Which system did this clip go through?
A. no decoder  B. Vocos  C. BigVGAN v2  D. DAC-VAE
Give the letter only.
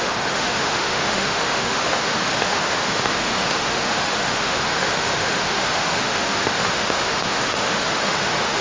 D